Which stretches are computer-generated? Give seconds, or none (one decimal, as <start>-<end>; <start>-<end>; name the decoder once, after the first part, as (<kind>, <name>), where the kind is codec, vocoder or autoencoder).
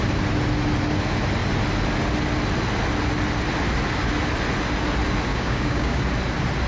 5.3-6.0 (codec, DAC)